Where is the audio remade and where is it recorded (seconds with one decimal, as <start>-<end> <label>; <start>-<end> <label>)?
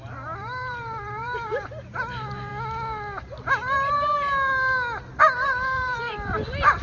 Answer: 0.0-2.5 remade; 2.5-5.2 recorded; 5.2-6.8 remade